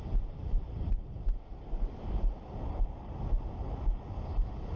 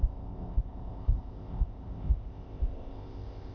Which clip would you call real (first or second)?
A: first